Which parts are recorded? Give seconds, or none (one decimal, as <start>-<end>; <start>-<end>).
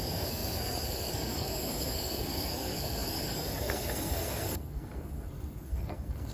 none